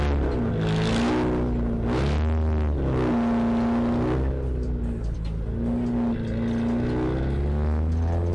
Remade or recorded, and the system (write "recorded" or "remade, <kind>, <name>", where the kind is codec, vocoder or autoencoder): recorded